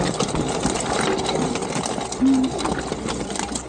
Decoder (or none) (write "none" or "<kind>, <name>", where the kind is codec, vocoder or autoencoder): none